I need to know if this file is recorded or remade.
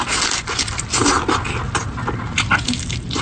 recorded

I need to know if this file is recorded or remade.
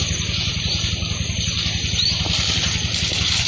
recorded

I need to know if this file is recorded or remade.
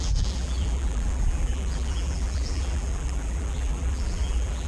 remade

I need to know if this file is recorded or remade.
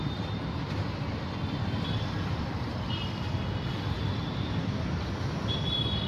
recorded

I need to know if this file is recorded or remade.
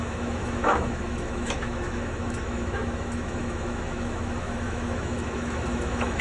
remade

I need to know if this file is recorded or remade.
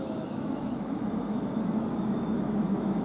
remade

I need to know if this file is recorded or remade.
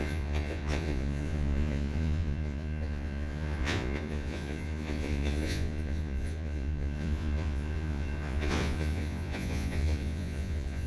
remade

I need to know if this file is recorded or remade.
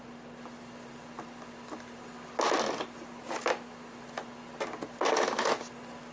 recorded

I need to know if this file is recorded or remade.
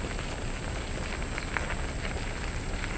recorded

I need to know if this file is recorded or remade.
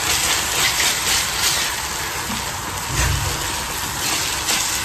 recorded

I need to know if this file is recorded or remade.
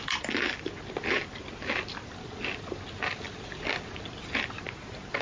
recorded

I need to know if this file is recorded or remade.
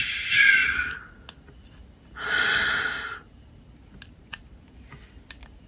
recorded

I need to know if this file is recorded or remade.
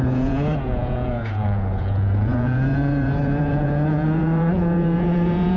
remade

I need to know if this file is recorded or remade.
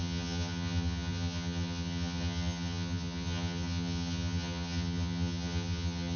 remade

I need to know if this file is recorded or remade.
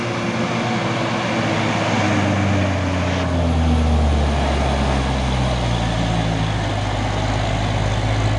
recorded